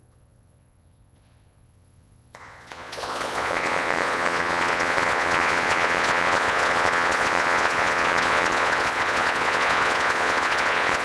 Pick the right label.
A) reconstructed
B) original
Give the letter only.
A